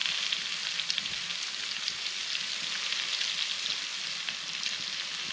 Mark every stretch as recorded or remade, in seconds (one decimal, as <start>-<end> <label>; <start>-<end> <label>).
0.0-5.3 recorded